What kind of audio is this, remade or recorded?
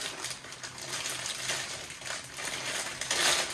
recorded